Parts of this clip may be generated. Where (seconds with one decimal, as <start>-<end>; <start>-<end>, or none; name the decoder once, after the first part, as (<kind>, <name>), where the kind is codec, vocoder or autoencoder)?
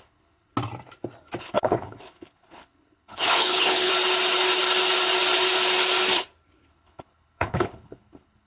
0.0-0.5 (codec, HILCodec); 1.4-3.9; 6.7-8.5